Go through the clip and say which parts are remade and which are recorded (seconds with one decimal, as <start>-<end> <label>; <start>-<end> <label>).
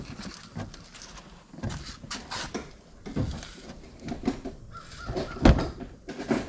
0.0-6.5 recorded